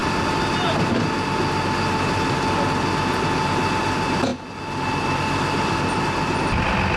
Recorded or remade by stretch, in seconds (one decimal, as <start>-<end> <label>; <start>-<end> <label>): 0.0-7.0 recorded